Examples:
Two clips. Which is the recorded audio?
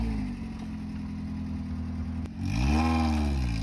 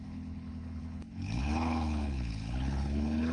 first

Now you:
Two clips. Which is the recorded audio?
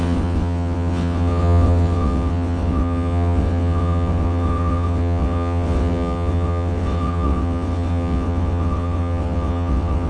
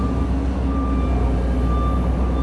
second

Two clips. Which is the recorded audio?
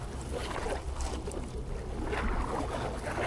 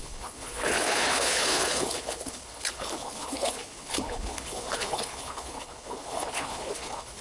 first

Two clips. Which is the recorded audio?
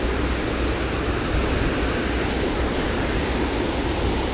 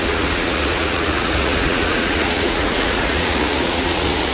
first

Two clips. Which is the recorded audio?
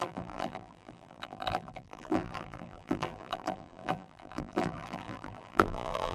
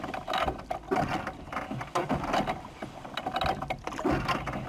second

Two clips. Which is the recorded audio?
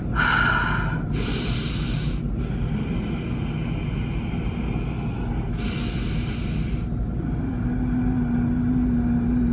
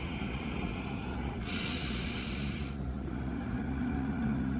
first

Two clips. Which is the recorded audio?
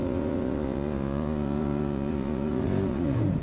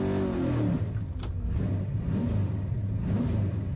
second